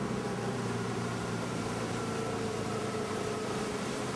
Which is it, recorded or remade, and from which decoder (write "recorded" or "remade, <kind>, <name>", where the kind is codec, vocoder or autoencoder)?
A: remade, vocoder, BigVGAN v2